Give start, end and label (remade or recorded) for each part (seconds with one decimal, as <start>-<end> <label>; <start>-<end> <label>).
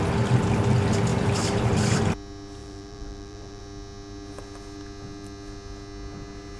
0.0-1.1 recorded; 1.1-2.0 remade; 2.0-2.6 recorded; 2.6-3.6 remade; 3.6-6.6 recorded